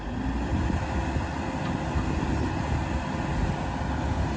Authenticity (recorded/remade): recorded